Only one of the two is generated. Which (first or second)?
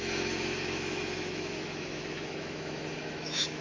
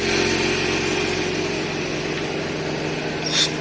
first